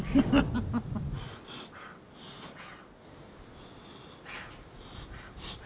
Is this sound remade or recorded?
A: recorded